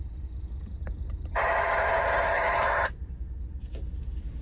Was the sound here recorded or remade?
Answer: remade